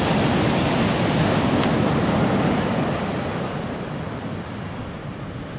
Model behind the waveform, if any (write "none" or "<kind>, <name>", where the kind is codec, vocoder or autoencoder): none